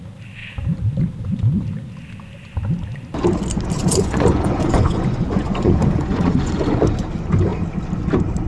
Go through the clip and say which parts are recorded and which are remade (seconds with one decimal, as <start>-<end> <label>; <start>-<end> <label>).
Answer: 0.0-3.8 recorded; 3.8-6.8 remade; 6.8-8.5 recorded